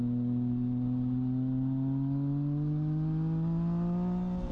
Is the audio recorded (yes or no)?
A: yes